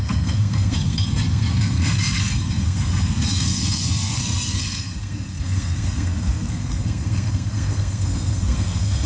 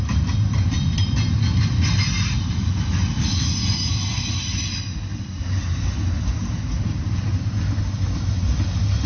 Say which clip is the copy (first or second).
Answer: first